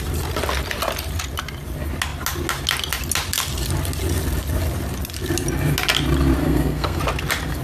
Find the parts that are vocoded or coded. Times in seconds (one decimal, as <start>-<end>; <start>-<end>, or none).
6.4-7.0